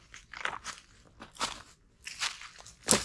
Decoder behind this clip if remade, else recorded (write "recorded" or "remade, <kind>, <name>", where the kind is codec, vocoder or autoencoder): recorded